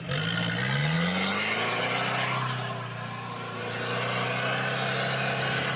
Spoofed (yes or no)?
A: no